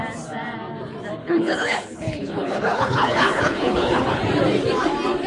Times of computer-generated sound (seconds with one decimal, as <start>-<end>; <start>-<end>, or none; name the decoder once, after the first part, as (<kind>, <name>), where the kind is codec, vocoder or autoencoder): 1.2-4.2 (codec, HILCodec)